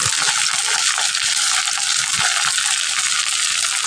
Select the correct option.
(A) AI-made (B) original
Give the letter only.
B